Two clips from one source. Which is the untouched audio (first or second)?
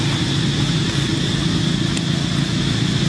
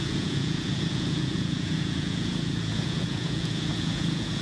first